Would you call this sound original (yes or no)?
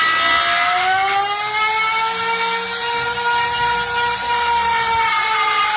yes